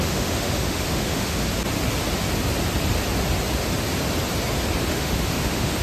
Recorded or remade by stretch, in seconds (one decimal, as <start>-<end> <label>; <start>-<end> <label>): 0.0-1.4 remade; 1.4-4.9 recorded; 4.9-5.8 remade